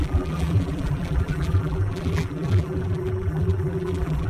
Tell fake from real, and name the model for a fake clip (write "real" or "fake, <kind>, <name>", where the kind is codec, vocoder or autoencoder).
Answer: fake, vocoder, BigVGAN v2